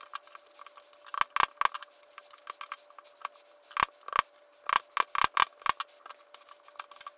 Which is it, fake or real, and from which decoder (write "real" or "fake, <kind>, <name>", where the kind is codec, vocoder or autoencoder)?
real